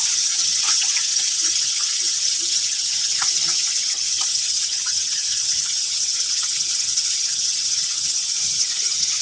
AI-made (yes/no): yes